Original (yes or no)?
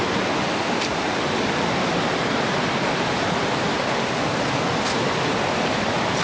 yes